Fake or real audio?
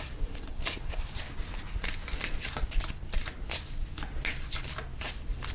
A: real